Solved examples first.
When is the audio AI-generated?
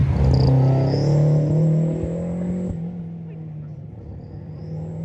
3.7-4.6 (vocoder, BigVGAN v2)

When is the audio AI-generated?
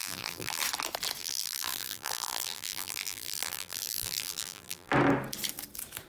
0.0-0.6 (vocoder, BigVGAN v2); 1.2-4.9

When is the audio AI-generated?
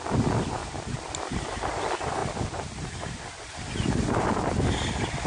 0.6-1.7 (vocoder, BigVGAN v2); 2.2-3.7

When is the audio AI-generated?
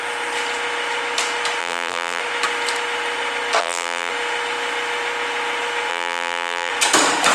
1.6-2.2 (vocoder, BigVGAN v2); 3.6-4.1; 5.9-6.7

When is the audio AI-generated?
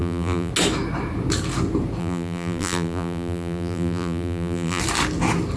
0.0-0.5 (vocoder, BigVGAN v2); 2.0-4.8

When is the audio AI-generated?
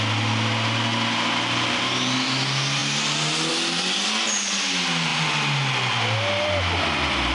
none